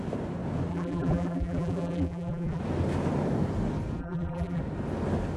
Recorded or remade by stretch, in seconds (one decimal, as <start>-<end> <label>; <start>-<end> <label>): 0.0-0.7 recorded; 0.7-2.6 remade; 2.6-4.0 recorded; 4.0-4.6 remade; 4.6-5.4 recorded